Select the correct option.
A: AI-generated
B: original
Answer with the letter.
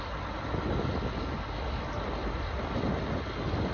B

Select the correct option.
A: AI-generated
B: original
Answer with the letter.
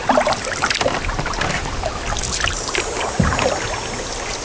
B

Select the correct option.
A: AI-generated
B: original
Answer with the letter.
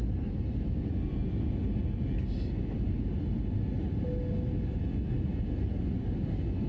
B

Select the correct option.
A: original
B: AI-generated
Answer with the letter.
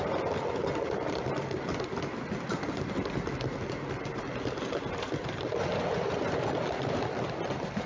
A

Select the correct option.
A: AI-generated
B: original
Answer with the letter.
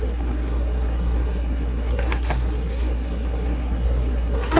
A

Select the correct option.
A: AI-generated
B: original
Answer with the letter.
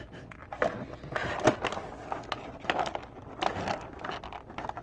B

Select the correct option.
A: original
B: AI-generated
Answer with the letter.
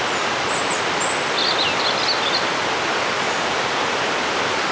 A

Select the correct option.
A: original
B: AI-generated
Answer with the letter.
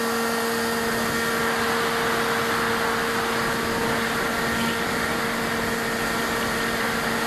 A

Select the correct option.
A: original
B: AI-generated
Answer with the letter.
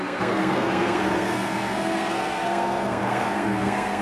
B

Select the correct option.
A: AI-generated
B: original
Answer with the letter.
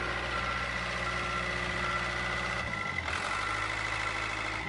B